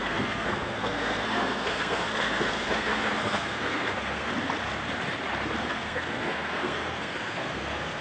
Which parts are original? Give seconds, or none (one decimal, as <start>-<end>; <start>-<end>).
4.3-5.6